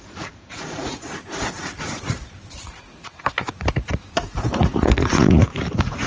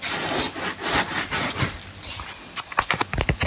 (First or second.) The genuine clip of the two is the second